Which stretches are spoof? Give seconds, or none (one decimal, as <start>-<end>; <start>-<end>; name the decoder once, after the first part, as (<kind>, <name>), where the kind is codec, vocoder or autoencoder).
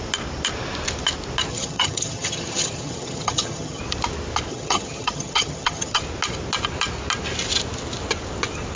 1.5-3.8 (vocoder, HiFi-GAN); 4.5-6.0